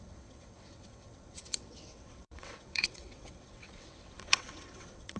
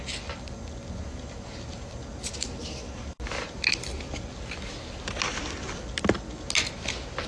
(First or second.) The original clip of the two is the second